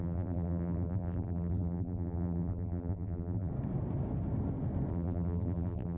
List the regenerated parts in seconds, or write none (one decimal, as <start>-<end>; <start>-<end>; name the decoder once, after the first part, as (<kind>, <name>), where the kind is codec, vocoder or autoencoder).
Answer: 0.0-3.5 (vocoder, BigVGAN v2); 4.9-6.0

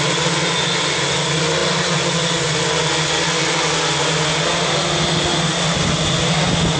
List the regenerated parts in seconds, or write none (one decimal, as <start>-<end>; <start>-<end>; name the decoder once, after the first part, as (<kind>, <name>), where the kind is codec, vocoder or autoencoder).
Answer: none

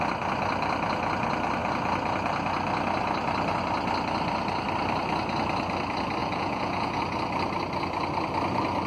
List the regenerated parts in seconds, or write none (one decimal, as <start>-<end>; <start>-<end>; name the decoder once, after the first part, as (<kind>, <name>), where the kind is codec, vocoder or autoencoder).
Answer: 6.2-7.0 (vocoder, Vocos)

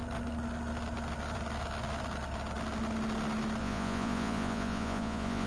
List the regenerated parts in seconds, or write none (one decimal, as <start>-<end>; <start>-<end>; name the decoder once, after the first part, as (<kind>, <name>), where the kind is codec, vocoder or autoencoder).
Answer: 3.6-5.5 (vocoder, Vocos)

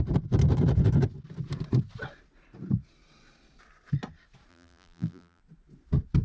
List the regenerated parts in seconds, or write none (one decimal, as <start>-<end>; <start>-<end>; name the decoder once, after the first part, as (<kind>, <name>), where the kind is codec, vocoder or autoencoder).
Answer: 4.5-5.4 (vocoder, BigVGAN v2)